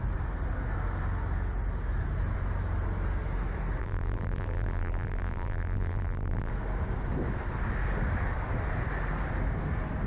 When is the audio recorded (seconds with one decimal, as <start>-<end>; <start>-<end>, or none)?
0.0-3.8; 6.5-10.1